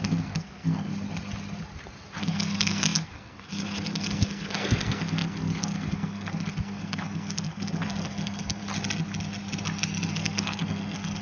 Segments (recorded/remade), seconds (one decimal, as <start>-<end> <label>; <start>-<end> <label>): 0.0-0.9 remade; 0.9-2.2 recorded; 2.2-8.6 remade; 8.6-10.1 recorded; 10.1-11.2 remade